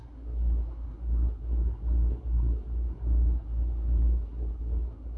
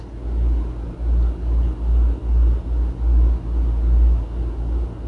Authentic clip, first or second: second